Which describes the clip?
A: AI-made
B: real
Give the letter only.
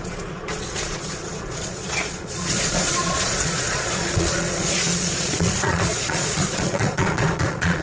A